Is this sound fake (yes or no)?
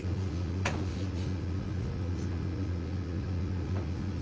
yes